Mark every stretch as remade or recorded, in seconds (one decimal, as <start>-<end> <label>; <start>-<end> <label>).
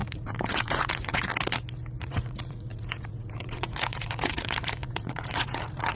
0.0-1.3 remade; 1.3-2.0 recorded; 2.0-6.0 remade